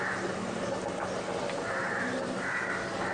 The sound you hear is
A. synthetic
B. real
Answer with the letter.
B